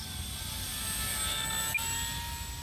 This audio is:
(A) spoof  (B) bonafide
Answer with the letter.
B